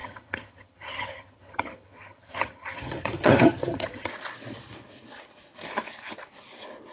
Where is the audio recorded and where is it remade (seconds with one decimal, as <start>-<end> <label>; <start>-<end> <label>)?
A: 0.0-4.1 remade; 4.1-6.9 recorded